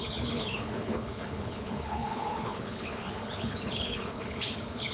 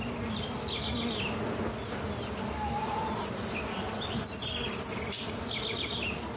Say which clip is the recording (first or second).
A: second